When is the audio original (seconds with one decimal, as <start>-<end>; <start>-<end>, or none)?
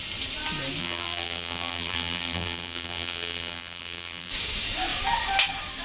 0.0-0.8; 4.3-5.8